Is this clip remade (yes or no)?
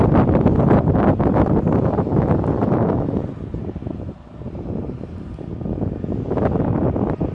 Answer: no